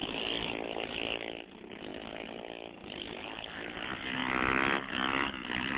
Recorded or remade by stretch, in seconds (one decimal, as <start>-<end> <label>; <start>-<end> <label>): 0.0-0.6 remade; 0.6-4.2 recorded; 4.2-5.8 remade